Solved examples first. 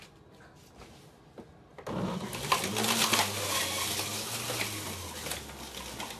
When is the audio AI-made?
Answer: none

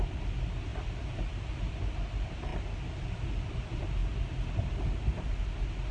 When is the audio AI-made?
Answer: none

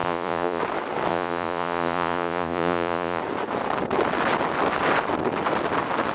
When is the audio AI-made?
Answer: 0.0-0.6 (vocoder, Vocos); 1.1-3.2

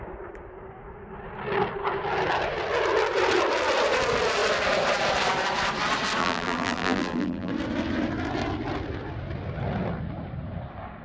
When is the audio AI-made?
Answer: 6.2-7.5 (vocoder, BigVGAN v2)